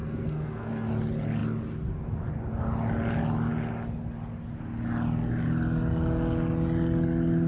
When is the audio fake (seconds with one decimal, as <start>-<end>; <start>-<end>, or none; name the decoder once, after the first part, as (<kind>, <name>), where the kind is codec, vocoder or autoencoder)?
0.0-0.9 (codec, SNAC)